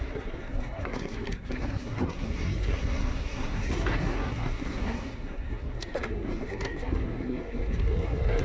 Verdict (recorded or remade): remade